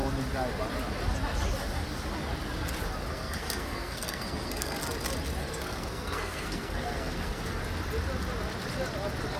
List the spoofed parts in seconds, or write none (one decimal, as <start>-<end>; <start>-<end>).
3.1-4.8; 5.4-7.6